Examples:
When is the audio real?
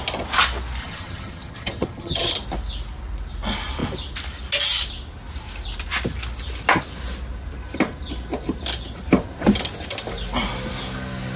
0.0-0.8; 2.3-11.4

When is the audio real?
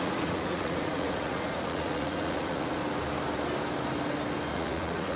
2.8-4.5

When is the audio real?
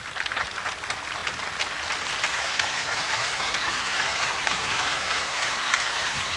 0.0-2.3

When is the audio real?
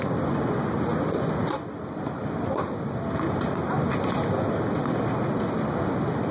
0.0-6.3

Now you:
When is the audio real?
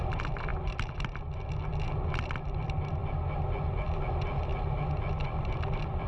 0.0-6.1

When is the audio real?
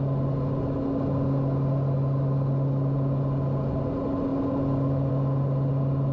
0.0-6.1